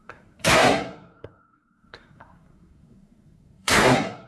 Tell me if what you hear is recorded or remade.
remade